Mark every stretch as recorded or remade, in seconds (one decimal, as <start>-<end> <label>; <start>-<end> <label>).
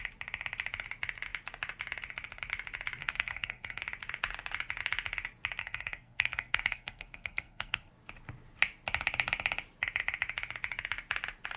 0.0-3.0 recorded; 3.0-3.8 remade; 3.8-5.6 recorded; 5.6-7.9 remade; 7.9-11.6 recorded